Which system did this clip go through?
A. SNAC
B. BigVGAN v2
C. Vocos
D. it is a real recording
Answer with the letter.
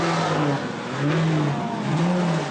D